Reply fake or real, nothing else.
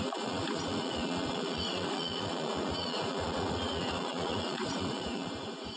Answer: fake